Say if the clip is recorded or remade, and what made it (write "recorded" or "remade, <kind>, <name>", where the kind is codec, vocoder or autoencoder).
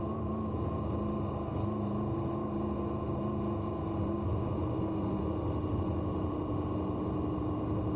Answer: recorded